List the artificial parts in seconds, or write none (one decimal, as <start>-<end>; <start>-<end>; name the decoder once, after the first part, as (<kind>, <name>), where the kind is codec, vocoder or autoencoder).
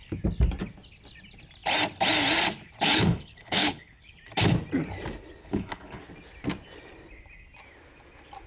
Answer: 2.9-4.1 (codec, HILCodec); 5.4-6.0